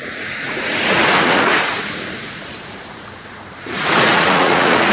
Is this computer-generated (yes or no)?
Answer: yes